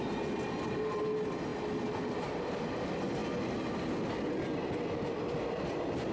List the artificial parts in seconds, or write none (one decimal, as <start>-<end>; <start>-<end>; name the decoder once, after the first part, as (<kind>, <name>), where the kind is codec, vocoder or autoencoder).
none